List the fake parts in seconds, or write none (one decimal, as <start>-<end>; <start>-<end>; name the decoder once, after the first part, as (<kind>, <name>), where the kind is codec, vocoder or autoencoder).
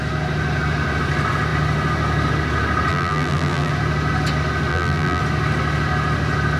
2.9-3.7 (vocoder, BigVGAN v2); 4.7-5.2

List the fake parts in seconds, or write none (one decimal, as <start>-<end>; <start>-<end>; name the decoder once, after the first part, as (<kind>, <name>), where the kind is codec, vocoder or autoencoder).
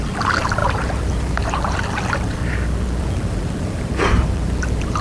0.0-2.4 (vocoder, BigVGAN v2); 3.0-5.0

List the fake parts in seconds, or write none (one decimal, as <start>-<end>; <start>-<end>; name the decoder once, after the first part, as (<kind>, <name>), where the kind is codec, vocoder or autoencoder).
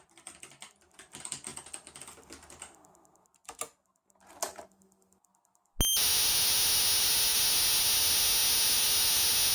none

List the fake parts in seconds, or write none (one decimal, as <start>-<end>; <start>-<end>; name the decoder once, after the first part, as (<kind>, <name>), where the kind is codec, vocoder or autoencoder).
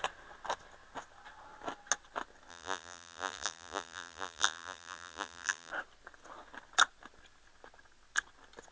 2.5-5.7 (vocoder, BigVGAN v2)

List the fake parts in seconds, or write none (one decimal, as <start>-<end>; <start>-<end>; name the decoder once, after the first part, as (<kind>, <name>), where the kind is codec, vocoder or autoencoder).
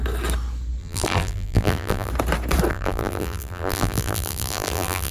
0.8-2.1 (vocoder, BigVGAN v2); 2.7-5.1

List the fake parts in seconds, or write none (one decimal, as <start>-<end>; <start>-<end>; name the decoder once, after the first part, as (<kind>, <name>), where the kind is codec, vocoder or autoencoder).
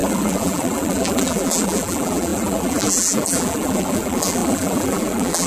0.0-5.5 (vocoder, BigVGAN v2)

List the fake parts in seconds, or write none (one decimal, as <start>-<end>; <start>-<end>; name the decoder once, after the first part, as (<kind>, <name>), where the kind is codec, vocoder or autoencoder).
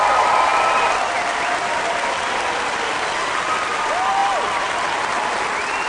none